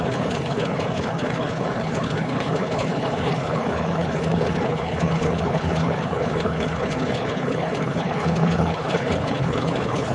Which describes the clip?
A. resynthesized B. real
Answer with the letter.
A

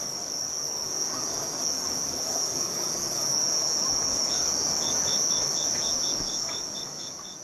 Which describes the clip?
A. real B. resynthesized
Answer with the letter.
B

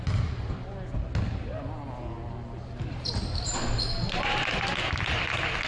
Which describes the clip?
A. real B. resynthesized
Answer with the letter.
A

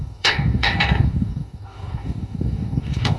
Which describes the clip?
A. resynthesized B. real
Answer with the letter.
A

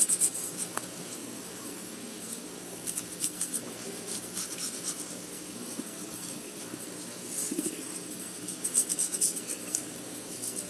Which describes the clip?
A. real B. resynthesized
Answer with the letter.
B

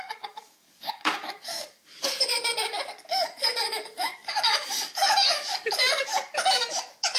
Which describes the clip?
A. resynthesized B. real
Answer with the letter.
A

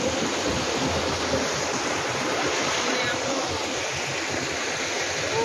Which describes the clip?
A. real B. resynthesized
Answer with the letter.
A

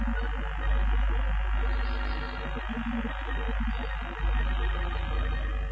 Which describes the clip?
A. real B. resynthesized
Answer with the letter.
A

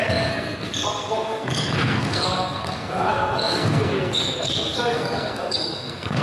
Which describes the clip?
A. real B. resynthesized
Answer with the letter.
B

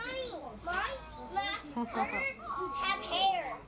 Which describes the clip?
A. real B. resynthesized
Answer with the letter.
A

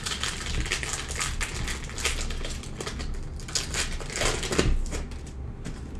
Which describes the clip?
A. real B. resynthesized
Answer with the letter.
A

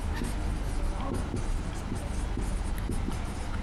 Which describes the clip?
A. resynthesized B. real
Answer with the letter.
B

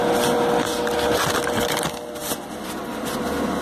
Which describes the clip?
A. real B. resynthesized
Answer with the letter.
A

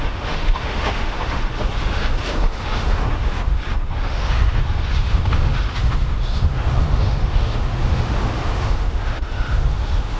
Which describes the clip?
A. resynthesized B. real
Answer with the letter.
A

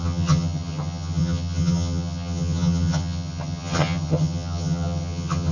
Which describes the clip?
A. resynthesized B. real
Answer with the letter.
A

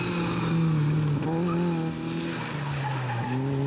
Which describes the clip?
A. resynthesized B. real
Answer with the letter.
B